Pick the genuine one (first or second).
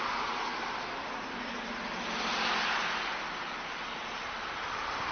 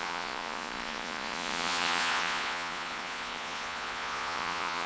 first